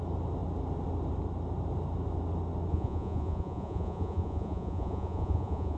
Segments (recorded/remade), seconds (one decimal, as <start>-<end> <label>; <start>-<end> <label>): 0.0-2.7 recorded; 2.7-5.8 remade